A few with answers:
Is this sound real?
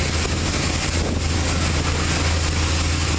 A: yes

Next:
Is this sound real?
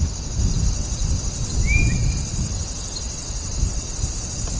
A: yes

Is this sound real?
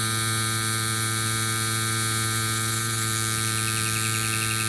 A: yes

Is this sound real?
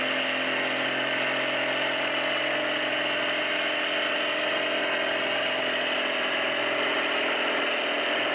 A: yes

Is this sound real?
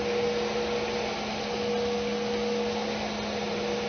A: yes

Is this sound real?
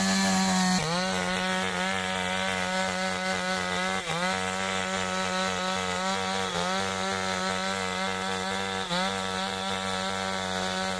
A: yes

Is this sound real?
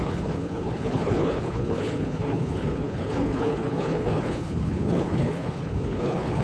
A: no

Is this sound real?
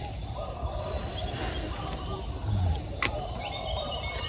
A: yes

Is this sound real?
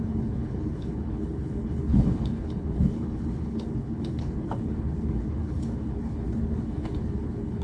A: no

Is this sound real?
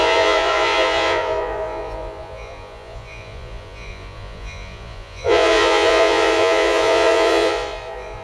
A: no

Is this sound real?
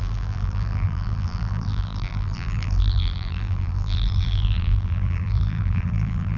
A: no